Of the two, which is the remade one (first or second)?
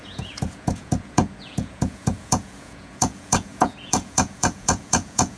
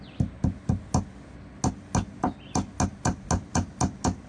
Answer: first